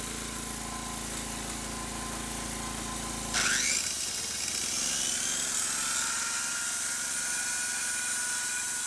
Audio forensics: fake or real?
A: real